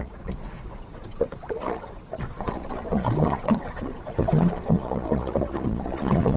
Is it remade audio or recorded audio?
remade